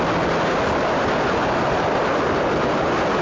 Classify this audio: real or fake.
real